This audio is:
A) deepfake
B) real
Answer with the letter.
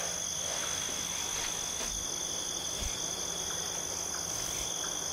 B